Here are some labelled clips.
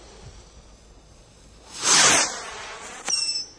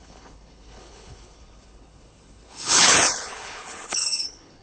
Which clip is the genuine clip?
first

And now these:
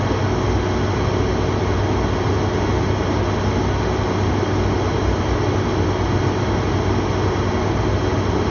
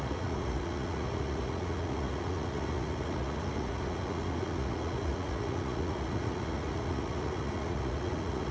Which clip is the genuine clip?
first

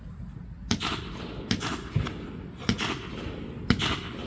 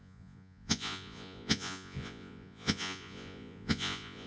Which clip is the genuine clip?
first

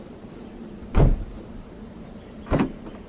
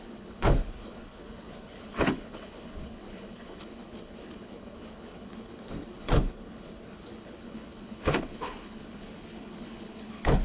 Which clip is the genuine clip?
first